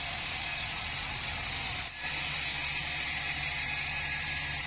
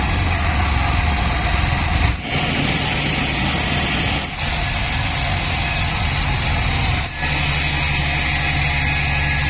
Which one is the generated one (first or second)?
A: first